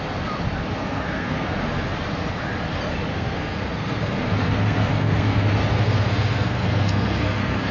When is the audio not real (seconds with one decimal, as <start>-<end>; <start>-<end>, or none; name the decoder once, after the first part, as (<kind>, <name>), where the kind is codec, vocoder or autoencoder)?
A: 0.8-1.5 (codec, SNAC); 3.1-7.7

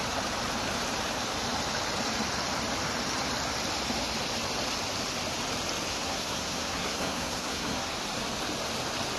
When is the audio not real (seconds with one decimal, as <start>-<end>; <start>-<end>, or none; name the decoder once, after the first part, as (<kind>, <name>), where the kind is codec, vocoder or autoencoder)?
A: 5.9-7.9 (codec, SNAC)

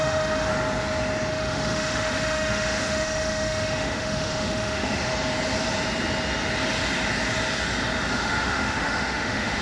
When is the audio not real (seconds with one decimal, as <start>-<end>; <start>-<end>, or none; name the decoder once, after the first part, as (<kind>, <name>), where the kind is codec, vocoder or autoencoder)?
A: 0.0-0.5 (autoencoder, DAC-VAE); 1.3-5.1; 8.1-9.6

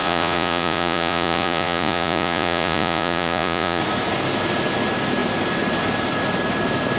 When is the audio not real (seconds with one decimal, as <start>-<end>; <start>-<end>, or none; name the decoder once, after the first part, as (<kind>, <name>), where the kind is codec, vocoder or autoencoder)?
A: 0.0-3.8 (vocoder, Vocos)